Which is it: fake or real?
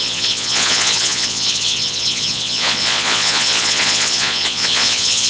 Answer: fake